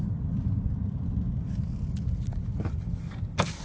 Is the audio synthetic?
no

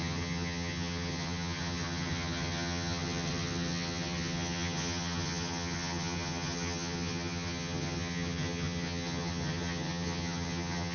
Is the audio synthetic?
yes